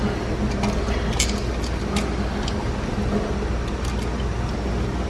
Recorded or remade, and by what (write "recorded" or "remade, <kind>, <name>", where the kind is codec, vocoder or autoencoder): recorded